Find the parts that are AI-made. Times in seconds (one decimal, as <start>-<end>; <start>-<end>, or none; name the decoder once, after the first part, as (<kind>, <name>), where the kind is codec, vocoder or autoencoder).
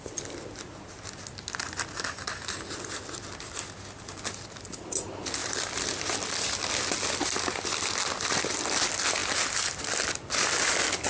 none